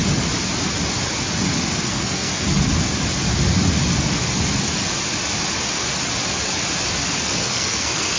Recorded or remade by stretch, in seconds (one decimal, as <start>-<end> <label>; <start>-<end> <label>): 0.0-1.9 recorded; 1.9-2.3 remade; 2.3-7.2 recorded; 7.2-8.2 remade